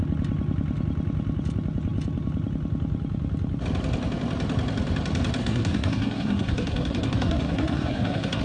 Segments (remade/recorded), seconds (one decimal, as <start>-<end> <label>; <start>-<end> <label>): 0.0-5.4 recorded; 5.4-8.4 remade